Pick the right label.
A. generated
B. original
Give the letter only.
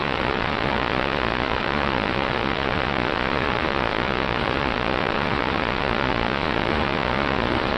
A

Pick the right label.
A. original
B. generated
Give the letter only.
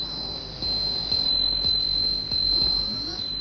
A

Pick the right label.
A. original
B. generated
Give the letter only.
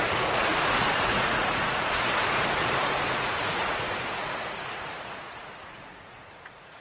B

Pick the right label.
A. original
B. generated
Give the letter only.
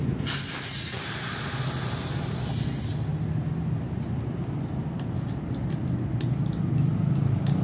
A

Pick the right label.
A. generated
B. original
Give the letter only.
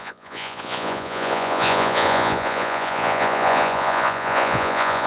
A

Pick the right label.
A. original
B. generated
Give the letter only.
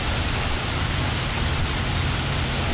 A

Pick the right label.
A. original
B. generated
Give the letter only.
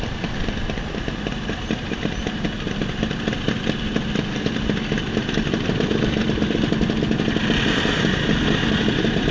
A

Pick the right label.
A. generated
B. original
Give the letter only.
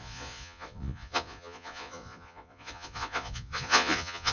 A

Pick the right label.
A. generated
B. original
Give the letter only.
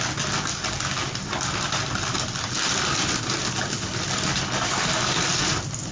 B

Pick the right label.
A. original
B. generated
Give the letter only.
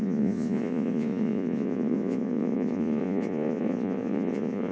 B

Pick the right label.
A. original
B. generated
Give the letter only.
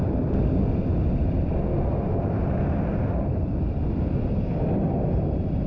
A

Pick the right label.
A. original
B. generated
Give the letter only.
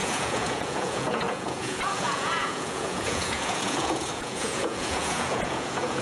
B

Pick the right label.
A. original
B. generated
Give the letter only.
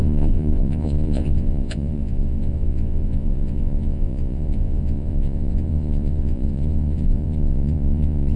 B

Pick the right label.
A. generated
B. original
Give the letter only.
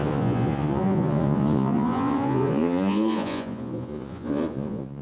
A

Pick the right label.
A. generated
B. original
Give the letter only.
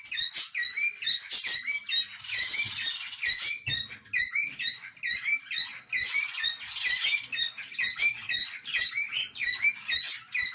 B